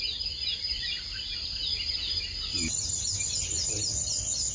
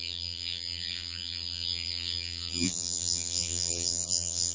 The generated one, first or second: second